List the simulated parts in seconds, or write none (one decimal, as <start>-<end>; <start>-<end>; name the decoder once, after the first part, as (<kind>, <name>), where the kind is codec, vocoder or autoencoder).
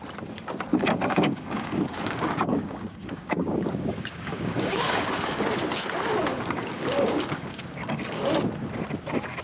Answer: 0.7-5.4 (codec, DAC); 6.3-8.2